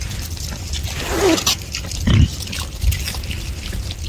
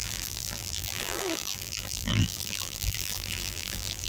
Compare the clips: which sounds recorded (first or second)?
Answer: first